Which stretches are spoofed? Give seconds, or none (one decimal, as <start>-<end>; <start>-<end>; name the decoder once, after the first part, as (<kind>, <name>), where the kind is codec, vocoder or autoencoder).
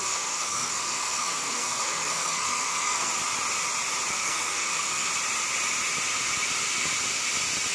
0.0-3.1 (codec, SNAC); 4.1-5.1